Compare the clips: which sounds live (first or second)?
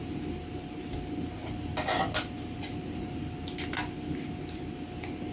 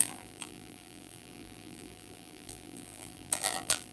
first